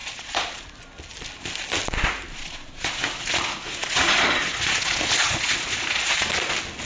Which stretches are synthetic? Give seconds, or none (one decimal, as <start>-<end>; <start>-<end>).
0.0-0.6; 2.3-6.3